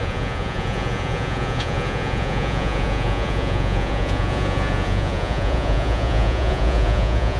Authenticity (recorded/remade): remade